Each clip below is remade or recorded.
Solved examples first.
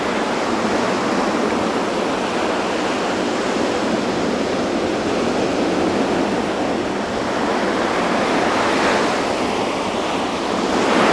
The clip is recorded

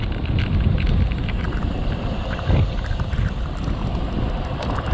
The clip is recorded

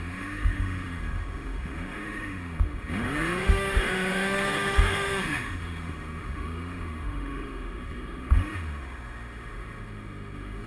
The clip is remade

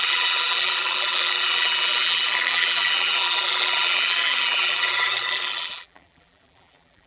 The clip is remade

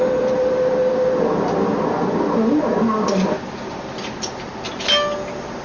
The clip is recorded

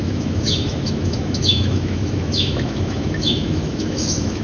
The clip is remade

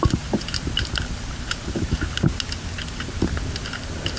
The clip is recorded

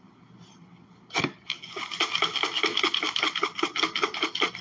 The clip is recorded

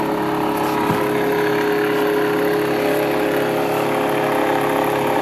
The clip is recorded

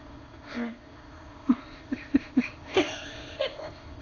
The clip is remade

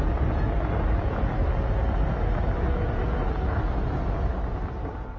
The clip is recorded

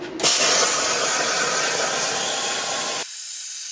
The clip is recorded